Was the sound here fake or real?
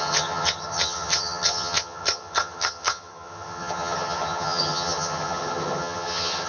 fake